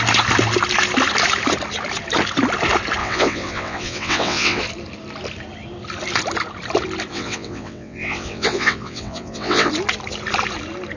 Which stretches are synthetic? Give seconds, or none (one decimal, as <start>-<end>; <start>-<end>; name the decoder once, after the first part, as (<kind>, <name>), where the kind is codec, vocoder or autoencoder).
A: 3.0-4.6 (vocoder, WaveNeXt); 7.1-9.7